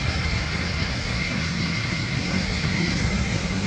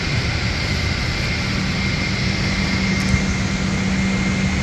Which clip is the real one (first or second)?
second